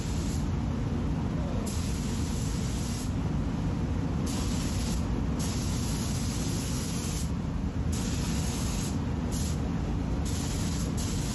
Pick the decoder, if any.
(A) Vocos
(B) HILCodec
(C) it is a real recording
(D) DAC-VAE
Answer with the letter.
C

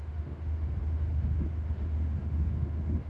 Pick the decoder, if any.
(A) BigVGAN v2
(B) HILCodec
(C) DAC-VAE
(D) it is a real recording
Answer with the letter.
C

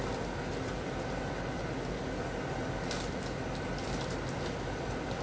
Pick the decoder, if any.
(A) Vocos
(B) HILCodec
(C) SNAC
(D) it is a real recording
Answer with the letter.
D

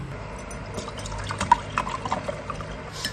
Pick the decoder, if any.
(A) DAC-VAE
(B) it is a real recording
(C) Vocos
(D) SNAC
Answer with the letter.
B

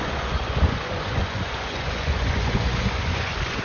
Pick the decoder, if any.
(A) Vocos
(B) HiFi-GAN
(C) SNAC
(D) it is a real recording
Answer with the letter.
A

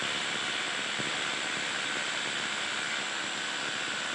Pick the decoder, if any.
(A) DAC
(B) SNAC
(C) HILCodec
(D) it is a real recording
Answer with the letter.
D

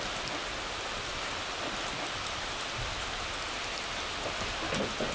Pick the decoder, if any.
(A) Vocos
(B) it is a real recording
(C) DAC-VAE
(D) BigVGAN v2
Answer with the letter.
B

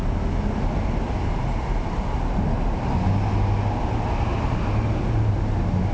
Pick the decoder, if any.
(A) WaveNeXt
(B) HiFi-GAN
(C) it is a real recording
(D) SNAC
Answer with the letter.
C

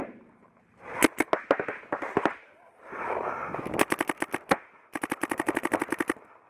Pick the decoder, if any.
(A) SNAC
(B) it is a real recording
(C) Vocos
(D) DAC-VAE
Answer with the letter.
B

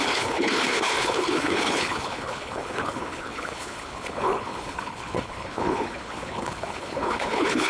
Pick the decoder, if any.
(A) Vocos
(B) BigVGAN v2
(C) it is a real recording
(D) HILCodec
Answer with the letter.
D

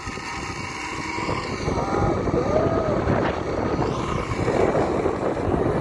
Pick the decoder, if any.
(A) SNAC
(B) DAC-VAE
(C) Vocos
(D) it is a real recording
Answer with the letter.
D